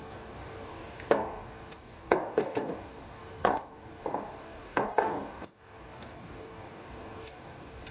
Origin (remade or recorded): remade